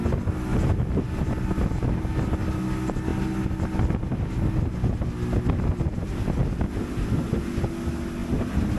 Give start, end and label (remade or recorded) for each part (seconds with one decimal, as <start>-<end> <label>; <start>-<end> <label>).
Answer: 0.0-8.8 recorded

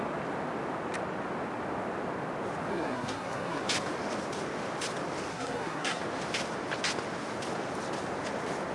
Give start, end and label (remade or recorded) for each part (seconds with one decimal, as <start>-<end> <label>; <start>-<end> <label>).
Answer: 0.0-2.7 recorded; 2.7-3.6 remade; 3.6-5.3 recorded; 5.3-6.0 remade; 6.0-8.7 recorded

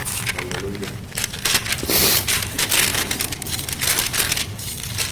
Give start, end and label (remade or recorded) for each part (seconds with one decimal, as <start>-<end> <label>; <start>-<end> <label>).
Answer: 0.0-5.1 recorded

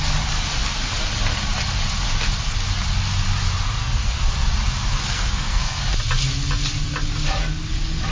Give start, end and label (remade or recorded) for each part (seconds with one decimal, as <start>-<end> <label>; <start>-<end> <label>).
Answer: 0.0-3.8 recorded; 3.8-4.3 remade; 4.3-4.9 recorded; 4.9-5.8 remade; 5.8-8.1 recorded

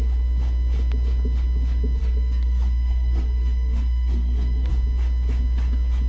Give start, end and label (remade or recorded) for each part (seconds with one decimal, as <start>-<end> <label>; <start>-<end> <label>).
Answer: 0.0-2.0 recorded; 2.0-4.7 remade; 4.7-6.1 recorded